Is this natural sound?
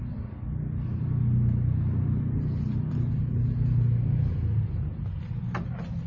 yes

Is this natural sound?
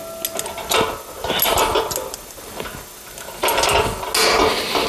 yes